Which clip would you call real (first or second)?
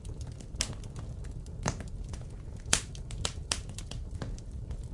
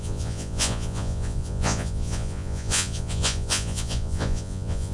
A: first